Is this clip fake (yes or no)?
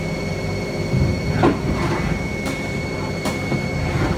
yes